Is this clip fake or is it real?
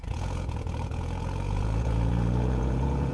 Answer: fake